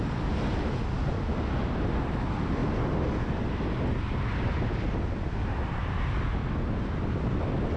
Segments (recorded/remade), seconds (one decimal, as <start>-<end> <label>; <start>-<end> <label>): 0.0-7.8 recorded